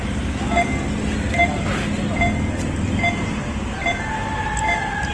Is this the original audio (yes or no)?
yes